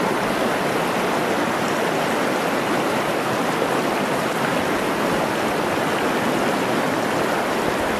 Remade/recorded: recorded